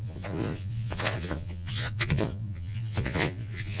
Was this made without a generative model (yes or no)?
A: no